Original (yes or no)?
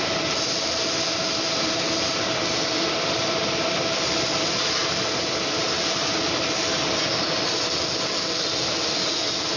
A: yes